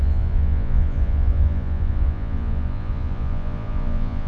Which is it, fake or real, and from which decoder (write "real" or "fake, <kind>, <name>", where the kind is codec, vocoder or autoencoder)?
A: fake, vocoder, Vocos